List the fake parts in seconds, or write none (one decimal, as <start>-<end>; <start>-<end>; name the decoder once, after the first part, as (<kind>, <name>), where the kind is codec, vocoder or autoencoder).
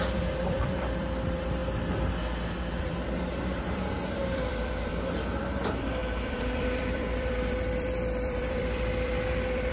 0.0-1.6 (vocoder, BigVGAN v2); 2.8-9.7